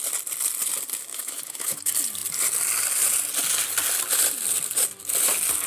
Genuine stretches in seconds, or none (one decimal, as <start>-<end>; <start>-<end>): 0.0-1.1; 1.8-5.7